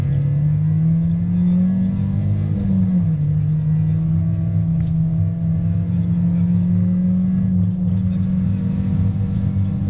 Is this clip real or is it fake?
real